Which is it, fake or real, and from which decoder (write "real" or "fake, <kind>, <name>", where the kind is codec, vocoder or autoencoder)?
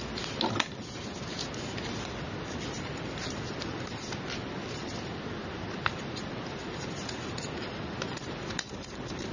real